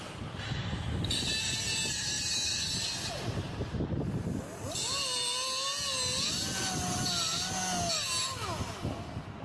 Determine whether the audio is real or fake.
real